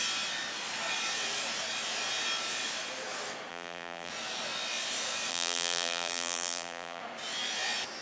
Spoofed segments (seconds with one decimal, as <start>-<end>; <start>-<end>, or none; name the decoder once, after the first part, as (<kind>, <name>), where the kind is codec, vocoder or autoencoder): 3.5-4.1 (vocoder, BigVGAN v2); 5.3-7.0